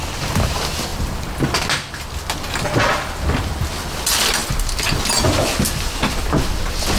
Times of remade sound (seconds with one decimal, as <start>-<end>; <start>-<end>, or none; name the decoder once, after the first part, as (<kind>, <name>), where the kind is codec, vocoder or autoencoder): none